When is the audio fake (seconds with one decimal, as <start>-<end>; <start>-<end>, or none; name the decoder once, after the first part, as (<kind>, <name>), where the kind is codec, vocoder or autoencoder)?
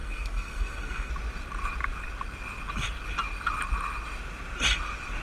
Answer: 0.0-1.1 (codec, SNAC)